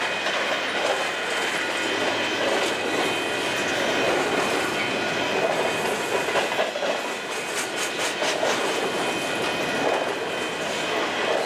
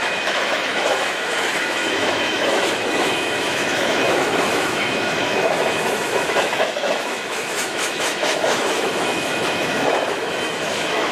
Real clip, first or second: first